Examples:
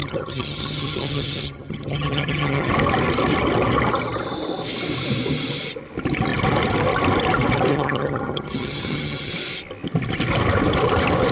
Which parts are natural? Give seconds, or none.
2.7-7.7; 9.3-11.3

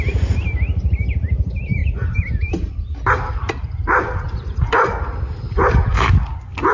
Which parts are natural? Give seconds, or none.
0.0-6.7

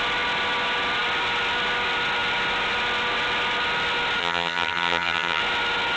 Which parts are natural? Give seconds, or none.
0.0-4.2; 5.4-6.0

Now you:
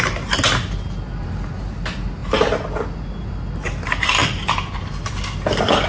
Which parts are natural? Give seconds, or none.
0.0-5.9